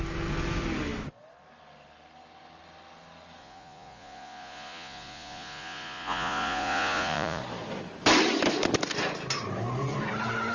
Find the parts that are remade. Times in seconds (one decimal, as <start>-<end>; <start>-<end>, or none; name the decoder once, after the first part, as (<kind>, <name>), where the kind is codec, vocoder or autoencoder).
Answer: 3.4-7.4 (vocoder, Vocos)